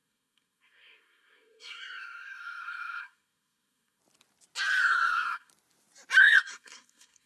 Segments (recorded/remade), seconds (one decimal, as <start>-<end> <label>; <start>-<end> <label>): 0.0-4.0 remade; 4.0-4.8 recorded; 4.8-5.5 remade; 5.5-6.2 recorded; 6.2-7.3 remade